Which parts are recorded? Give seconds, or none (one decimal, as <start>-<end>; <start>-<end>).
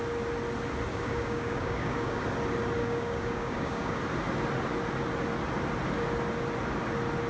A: 0.0-0.9; 2.2-2.8; 4.0-7.3